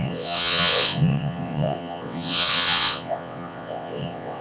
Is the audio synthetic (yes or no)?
yes